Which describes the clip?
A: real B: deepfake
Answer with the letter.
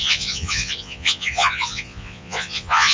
B